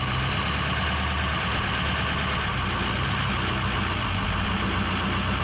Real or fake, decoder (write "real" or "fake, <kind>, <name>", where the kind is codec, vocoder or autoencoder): real